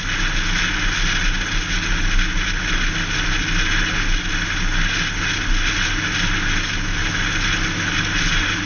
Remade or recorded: recorded